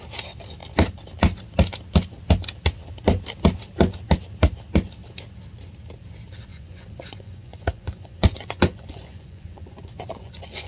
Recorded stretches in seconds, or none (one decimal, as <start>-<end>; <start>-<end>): 0.0-6.5